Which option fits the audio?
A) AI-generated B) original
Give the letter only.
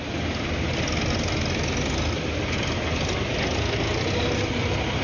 B